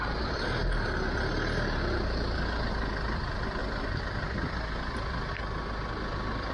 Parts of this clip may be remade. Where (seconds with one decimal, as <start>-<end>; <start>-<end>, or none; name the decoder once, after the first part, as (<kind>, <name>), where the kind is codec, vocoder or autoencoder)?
none